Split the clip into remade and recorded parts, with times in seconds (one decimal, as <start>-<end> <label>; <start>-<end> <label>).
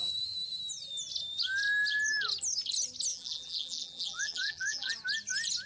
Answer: 0.0-3.1 recorded; 3.1-4.9 remade; 4.9-5.7 recorded